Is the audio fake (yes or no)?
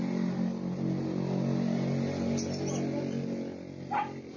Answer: no